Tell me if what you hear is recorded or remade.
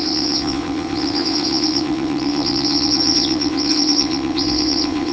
remade